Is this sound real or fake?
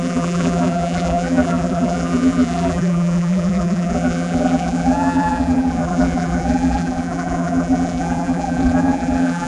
fake